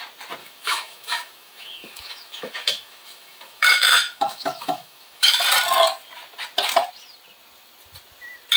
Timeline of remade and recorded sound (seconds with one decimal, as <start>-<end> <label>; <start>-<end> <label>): 0.0-0.4 recorded; 0.4-5.4 remade; 5.4-8.6 recorded